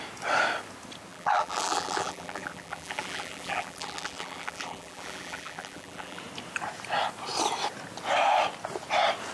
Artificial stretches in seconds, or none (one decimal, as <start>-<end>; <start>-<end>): 1.1-6.2